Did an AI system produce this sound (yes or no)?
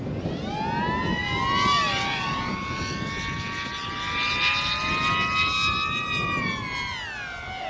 no